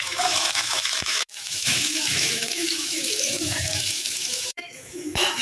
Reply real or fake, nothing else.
fake